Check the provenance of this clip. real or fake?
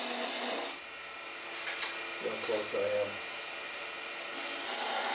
real